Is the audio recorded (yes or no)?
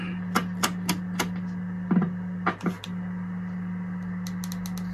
yes